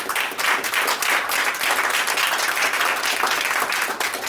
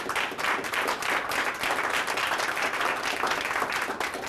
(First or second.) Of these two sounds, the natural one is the first